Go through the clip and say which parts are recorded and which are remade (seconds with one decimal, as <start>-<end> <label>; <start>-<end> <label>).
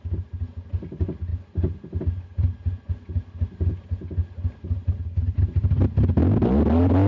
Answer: 0.0-7.1 recorded